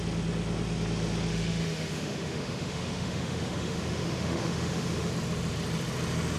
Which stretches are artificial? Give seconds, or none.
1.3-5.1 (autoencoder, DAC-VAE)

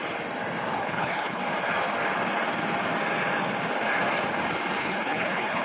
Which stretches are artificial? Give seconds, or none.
0.8-1.4 (codec, HILCodec); 4.8-5.6

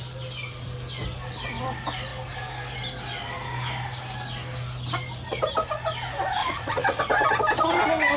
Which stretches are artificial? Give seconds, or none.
6.4-7.0 (vocoder, Vocos)

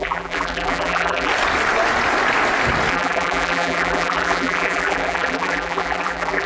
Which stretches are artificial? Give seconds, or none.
0.0-1.3 (vocoder, BigVGAN v2); 2.9-6.5

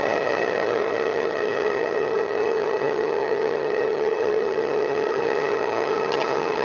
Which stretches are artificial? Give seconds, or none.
0.0-6.6 (vocoder, HiFi-GAN)

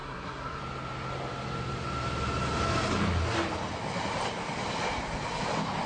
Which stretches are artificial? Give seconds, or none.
0.0-0.6 (codec, SNAC)

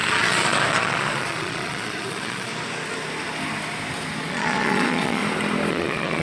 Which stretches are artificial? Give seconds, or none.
0.0-2.5 (vocoder, Vocos); 4.3-5.2; 5.7-6.2

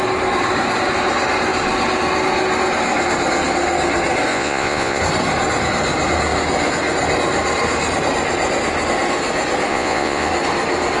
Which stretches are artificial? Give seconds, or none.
4.3-5.0 (vocoder, Vocos); 9.7-10.3